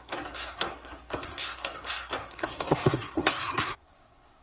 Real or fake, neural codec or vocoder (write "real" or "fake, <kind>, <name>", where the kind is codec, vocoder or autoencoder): fake, codec, SNAC